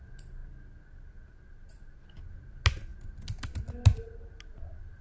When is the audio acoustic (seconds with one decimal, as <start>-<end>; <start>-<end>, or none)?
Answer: 0.0-5.0